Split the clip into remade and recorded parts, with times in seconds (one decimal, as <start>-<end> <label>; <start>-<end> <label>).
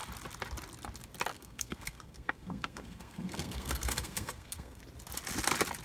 0.0-1.3 recorded; 1.3-4.8 remade; 4.8-5.8 recorded